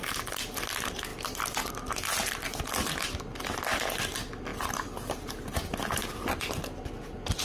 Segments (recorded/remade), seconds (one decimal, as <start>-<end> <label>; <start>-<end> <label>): 0.0-1.1 recorded; 1.1-1.7 remade; 1.7-4.5 recorded; 4.5-6.6 remade; 6.6-7.4 recorded

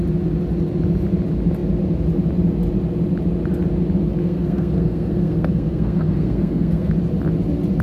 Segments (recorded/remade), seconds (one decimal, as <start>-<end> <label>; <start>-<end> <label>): 0.0-4.2 recorded; 4.2-6.9 remade; 6.9-7.8 recorded